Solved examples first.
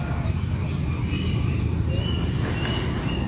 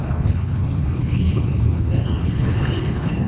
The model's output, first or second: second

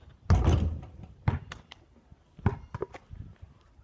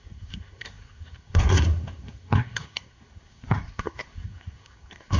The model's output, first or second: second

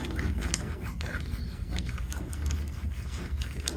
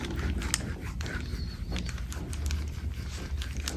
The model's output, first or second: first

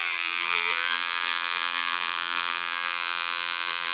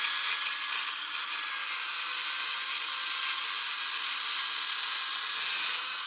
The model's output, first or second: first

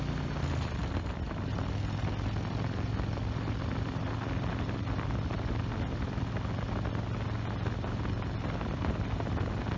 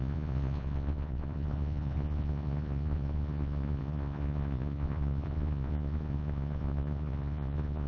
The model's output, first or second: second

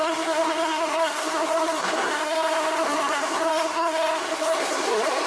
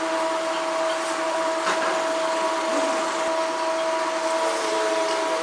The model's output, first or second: first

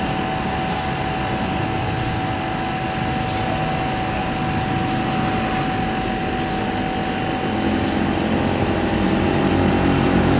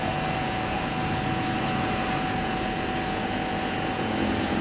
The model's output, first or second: second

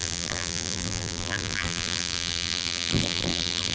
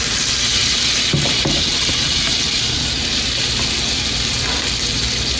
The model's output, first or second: first